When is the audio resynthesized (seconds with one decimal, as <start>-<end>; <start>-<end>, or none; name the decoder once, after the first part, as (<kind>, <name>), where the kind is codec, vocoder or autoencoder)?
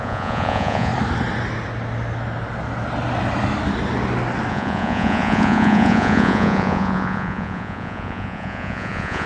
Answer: 0.0-0.9 (vocoder, Vocos); 4.5-9.3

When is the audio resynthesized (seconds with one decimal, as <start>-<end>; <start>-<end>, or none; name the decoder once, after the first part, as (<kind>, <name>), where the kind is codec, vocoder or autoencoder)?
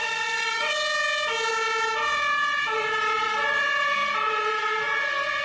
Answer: 0.0-0.7 (vocoder, Vocos)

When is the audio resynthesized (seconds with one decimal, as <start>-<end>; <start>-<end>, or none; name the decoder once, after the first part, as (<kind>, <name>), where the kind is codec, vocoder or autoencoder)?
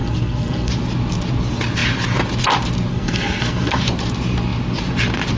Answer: 0.0-0.7 (codec, SNAC); 2.9-3.8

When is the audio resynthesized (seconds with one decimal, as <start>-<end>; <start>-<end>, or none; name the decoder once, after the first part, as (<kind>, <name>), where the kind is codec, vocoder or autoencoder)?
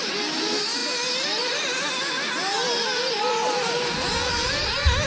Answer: none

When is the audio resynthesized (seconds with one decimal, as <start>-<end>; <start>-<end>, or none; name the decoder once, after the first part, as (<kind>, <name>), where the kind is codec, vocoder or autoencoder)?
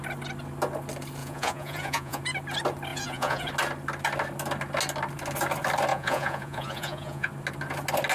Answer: 1.2-2.2 (vocoder, Vocos); 2.9-3.5; 5.9-7.3